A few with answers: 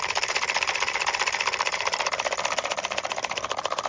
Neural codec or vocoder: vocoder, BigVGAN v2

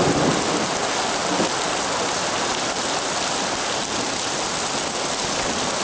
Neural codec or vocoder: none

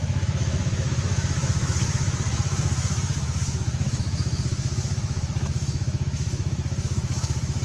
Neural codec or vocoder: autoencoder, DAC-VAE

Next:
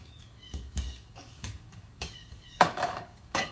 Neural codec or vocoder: codec, DAC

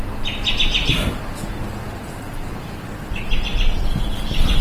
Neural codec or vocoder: none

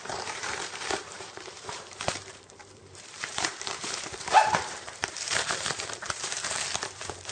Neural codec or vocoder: vocoder, BigVGAN v2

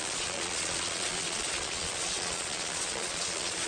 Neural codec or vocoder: vocoder, Vocos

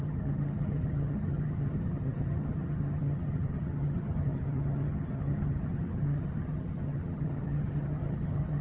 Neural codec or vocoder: vocoder, HiFi-GAN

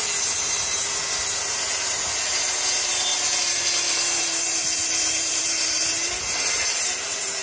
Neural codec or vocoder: vocoder, BigVGAN v2